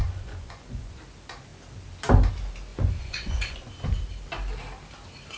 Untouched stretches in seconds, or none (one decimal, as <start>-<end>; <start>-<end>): 1.0-2.7; 3.7-5.4